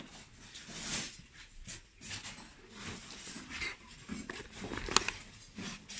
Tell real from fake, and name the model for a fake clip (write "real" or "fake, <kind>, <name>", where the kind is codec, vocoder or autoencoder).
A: real